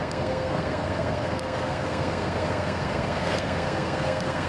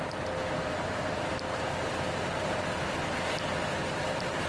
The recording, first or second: second